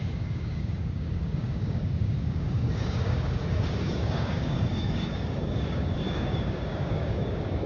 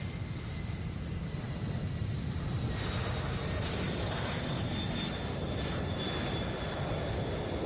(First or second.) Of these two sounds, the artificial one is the first